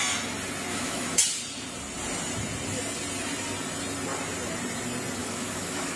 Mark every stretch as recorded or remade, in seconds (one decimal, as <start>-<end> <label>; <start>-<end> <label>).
0.0-0.7 recorded; 0.7-1.2 remade; 1.2-5.2 recorded; 5.2-6.0 remade